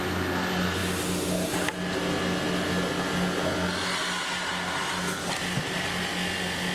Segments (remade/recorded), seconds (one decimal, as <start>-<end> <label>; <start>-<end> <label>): 0.0-6.7 recorded